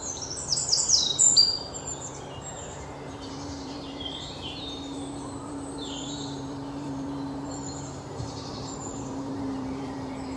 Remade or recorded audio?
remade